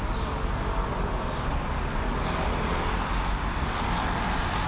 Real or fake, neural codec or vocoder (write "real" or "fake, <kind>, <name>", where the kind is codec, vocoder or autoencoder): real